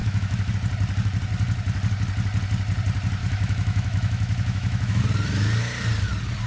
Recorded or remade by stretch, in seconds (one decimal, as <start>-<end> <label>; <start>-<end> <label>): 0.0-0.5 remade; 0.5-3.2 recorded; 3.2-5.0 remade; 5.0-6.5 recorded